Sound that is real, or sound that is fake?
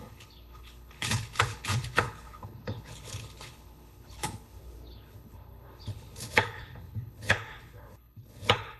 fake